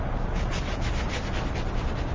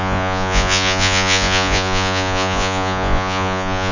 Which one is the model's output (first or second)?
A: second